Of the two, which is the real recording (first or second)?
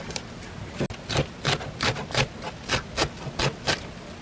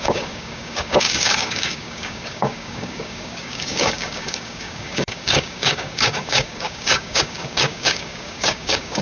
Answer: first